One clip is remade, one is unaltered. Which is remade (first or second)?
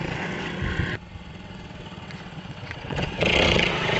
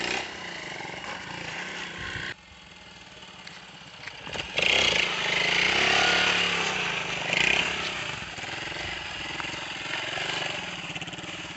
first